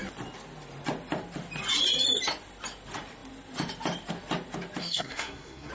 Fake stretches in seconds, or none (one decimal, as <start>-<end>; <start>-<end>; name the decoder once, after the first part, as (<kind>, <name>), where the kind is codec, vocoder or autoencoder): 4.8-5.7 (codec, SNAC)